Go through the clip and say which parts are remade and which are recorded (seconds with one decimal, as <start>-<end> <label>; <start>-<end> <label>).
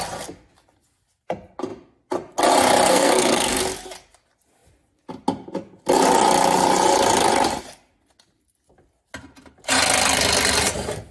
0.0-2.9 recorded; 2.9-3.6 remade; 3.6-11.1 recorded